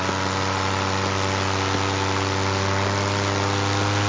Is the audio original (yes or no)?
yes